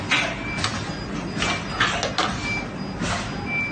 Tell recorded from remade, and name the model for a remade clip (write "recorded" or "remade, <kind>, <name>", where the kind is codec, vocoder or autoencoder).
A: recorded